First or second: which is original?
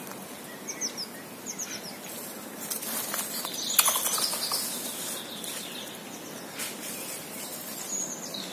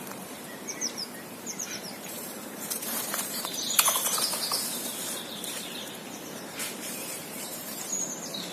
first